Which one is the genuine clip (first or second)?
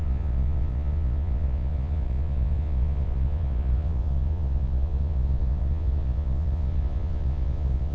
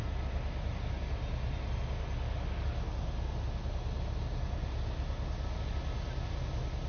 second